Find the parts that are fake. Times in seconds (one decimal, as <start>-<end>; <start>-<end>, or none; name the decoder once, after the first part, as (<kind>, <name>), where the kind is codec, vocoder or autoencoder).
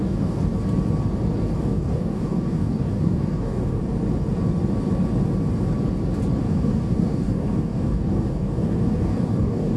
0.0-0.4 (codec, DAC); 1.6-3.8; 6.4-9.8